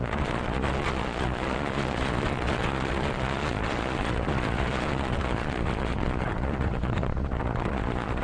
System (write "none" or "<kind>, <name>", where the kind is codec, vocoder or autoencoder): vocoder, Vocos